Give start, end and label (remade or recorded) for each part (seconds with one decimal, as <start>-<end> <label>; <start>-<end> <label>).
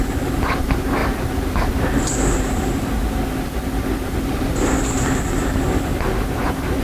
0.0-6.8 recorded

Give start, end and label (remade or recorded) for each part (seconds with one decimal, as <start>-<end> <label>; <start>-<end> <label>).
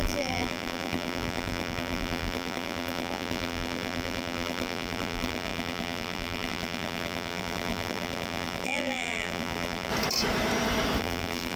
0.0-9.9 remade; 9.9-11.0 recorded; 11.0-11.6 remade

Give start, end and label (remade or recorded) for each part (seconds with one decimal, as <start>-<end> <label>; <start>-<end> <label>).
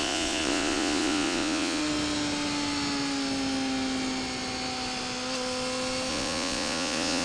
0.0-1.8 remade; 1.8-6.1 recorded; 6.1-7.2 remade